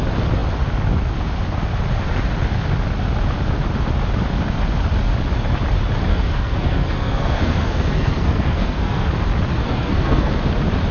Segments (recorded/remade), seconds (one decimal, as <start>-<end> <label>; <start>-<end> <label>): 0.0-6.1 recorded; 6.1-9.1 remade; 9.1-9.5 recorded; 9.5-10.3 remade; 10.3-10.9 recorded

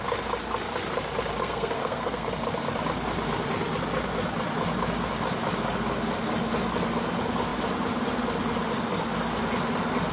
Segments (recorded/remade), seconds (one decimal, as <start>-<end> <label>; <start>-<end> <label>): 0.0-1.4 recorded; 1.4-2.3 remade; 2.3-10.1 recorded

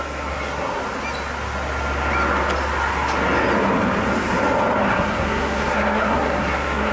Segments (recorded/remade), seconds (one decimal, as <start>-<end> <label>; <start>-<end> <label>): 0.0-0.8 remade; 0.8-4.9 recorded; 4.9-6.9 remade

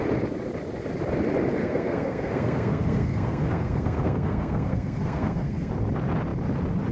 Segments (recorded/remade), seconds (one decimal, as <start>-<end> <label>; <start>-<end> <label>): 0.0-1.6 recorded; 1.6-5.7 remade; 5.7-6.9 recorded

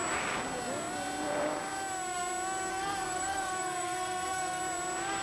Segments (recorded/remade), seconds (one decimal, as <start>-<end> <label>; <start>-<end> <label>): 0.0-2.7 recorded; 2.7-4.6 remade; 4.6-5.2 recorded

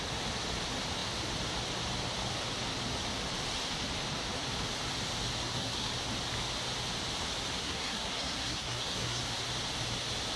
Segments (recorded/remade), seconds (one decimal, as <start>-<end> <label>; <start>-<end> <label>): 0.0-5.4 recorded; 5.4-5.9 remade; 5.9-7.6 recorded; 7.6-9.2 remade; 9.2-10.4 recorded

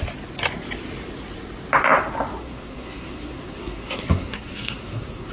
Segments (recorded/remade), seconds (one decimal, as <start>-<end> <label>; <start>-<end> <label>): 0.0-2.4 recorded; 2.4-5.3 remade